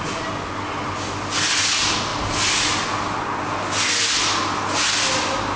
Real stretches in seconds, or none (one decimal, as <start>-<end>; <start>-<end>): 0.0-5.6